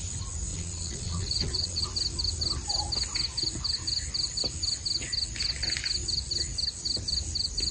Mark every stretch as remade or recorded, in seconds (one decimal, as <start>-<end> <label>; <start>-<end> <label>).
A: 0.0-0.5 recorded; 0.5-1.8 remade; 1.8-7.7 recorded